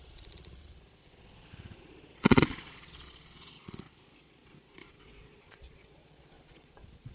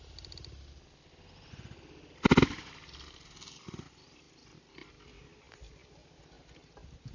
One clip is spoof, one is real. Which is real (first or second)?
second